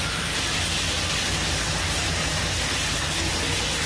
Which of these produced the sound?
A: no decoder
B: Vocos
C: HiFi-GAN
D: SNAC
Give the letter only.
A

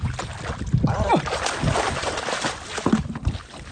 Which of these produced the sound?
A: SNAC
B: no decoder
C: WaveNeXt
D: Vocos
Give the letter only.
B